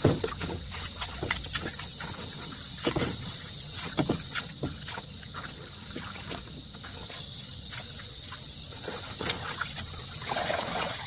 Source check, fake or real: fake